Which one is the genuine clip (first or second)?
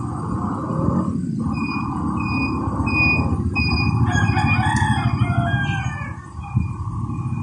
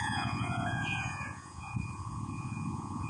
first